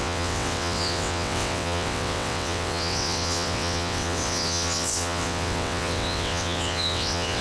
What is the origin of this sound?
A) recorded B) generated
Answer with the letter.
B